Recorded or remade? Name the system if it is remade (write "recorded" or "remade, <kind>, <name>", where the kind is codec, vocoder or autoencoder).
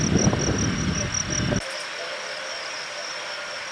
recorded